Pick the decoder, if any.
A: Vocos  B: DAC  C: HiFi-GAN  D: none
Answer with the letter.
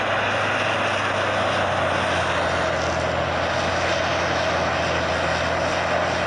D